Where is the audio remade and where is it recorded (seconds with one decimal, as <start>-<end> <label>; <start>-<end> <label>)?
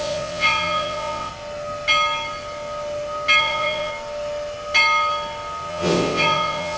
0.0-1.3 remade; 1.3-3.4 recorded; 3.4-3.9 remade; 3.9-5.7 recorded; 5.7-6.8 remade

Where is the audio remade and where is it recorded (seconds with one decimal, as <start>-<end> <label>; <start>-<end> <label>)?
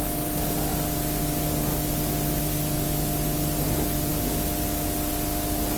0.0-5.8 recorded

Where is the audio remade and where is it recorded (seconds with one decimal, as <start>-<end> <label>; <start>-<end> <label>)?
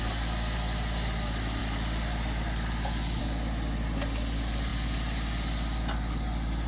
0.0-6.7 recorded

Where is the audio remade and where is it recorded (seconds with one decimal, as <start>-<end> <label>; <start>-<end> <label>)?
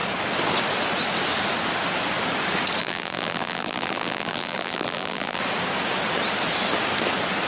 0.0-2.8 recorded; 2.8-5.4 remade; 5.4-7.5 recorded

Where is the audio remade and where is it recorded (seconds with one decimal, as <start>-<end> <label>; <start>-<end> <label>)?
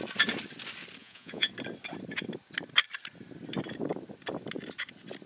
0.0-1.0 recorded; 1.0-1.5 remade; 1.5-5.3 recorded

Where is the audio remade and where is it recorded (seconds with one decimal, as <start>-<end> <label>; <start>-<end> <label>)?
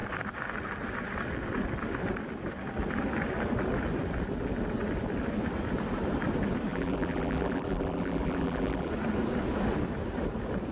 0.0-6.7 recorded; 6.7-8.9 remade; 8.9-10.7 recorded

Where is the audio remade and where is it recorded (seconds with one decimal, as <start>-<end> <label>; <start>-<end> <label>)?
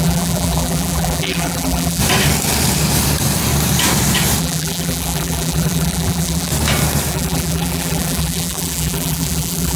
0.0-2.0 remade; 2.0-4.4 recorded; 4.4-6.5 remade; 6.5-7.1 recorded; 7.1-9.8 remade